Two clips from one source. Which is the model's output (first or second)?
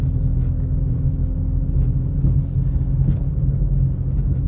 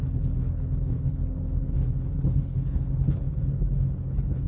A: second